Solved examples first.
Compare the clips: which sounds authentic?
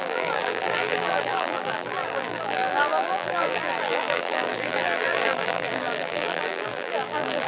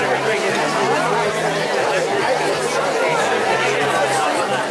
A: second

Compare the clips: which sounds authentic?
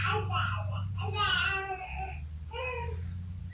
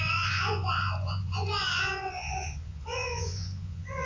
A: first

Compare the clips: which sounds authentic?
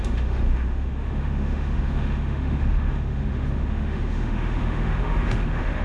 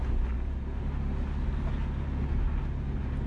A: second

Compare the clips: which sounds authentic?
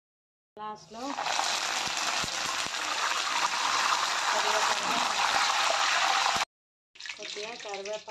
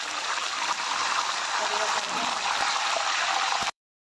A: first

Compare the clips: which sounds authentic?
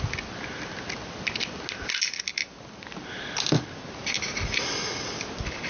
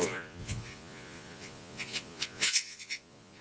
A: first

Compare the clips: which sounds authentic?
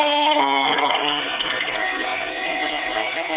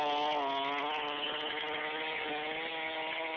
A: second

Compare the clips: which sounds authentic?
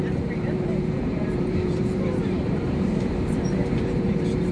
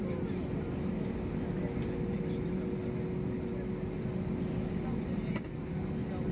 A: second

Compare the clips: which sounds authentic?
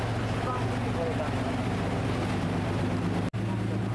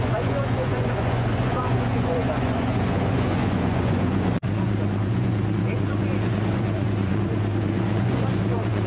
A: first